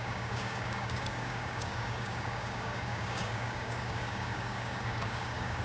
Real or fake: fake